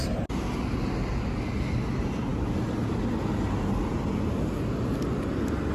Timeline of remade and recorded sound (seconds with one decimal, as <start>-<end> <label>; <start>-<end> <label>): 0.0-5.7 recorded

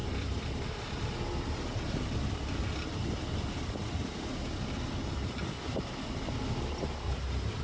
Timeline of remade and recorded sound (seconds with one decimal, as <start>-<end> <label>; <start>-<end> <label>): 0.0-2.6 remade; 2.6-3.8 recorded; 3.8-6.4 remade; 6.4-7.6 recorded

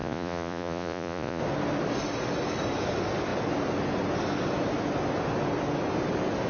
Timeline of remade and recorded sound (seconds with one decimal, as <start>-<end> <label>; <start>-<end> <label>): 0.0-1.4 remade; 1.4-6.5 recorded